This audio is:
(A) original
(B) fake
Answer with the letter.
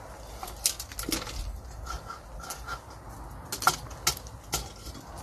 A